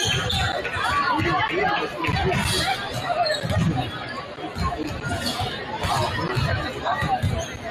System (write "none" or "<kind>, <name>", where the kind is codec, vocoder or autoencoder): none